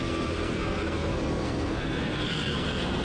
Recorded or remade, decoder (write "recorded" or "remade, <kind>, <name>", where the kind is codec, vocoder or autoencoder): remade, codec, SNAC